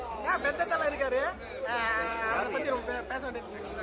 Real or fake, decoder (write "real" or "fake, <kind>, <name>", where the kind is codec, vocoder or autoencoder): real